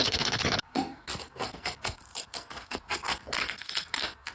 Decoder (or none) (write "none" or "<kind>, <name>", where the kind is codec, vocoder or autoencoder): codec, SNAC